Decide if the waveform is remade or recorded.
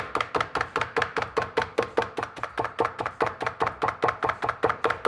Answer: recorded